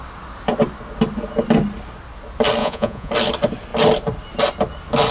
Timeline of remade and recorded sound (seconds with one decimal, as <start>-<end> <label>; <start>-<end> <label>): 0.0-2.6 recorded; 2.6-3.1 remade; 3.1-5.1 recorded